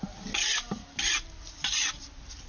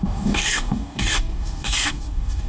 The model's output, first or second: second